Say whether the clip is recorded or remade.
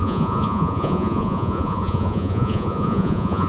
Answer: remade